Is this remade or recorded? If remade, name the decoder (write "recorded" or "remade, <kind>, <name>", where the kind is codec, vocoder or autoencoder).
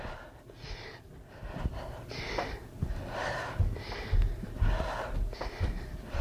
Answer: recorded